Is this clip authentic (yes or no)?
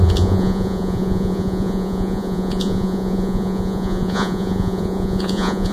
no